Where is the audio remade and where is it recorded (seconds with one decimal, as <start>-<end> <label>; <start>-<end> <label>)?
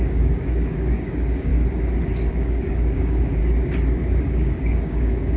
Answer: 0.0-1.5 remade; 1.5-2.3 recorded; 2.3-3.4 remade; 3.4-4.2 recorded; 4.2-5.4 remade